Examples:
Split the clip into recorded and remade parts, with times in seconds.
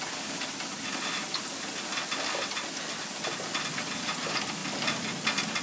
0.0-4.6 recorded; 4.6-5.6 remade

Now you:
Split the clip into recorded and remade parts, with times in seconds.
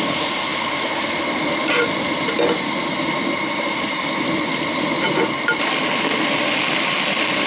0.0-7.5 recorded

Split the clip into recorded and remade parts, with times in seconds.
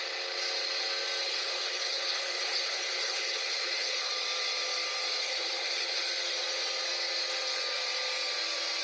0.0-1.2 recorded; 1.2-4.1 remade; 4.1-5.2 recorded; 5.2-6.0 remade; 6.0-8.8 recorded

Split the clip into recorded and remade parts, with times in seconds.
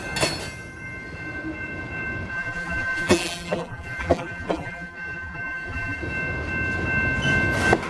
0.0-2.3 recorded; 2.3-6.0 remade; 6.0-7.9 recorded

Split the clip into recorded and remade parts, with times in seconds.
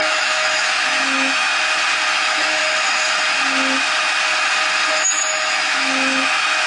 0.0-1.5 remade; 1.5-2.1 recorded; 2.1-2.6 remade; 2.6-4.9 recorded; 4.9-6.7 remade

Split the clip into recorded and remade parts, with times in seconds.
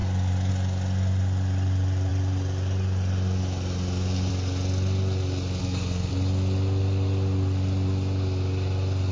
0.0-5.6 recorded; 5.6-6.1 remade; 6.1-9.1 recorded